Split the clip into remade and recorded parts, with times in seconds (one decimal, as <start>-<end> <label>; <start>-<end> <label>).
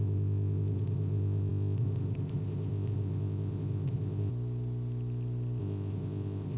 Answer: 0.0-4.3 remade; 4.3-5.6 recorded; 5.6-6.6 remade